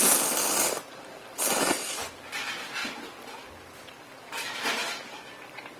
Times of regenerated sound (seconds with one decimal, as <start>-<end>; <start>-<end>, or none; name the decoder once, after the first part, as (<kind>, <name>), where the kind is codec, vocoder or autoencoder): 1.1-1.9 (vocoder, BigVGAN v2); 4.8-5.3